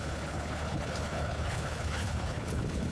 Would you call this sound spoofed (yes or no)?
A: yes